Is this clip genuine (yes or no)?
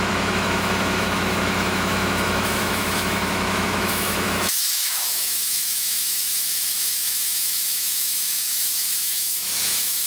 no